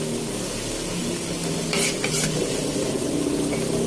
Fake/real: real